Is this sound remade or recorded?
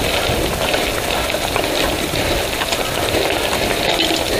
recorded